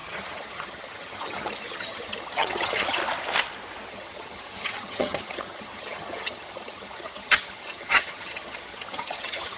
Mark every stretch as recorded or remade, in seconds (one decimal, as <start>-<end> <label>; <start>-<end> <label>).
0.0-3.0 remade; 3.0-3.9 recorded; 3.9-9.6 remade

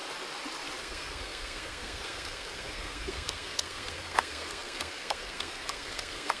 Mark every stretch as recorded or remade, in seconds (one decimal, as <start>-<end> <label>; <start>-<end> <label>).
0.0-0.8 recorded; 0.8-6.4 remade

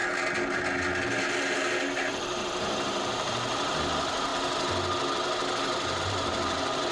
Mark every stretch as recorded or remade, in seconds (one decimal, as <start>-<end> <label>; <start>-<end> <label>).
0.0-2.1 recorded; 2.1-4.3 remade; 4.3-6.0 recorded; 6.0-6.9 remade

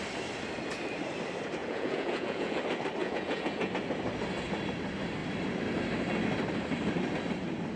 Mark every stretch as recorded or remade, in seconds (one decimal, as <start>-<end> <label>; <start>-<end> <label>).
0.0-1.6 recorded; 1.6-2.6 remade; 2.6-3.0 recorded; 3.0-3.7 remade; 3.7-7.8 recorded